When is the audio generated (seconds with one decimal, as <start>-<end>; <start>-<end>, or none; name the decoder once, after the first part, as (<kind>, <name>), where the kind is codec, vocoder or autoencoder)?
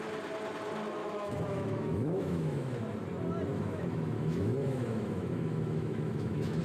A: 1.0-2.8 (autoencoder, DAC-VAE); 3.5-6.6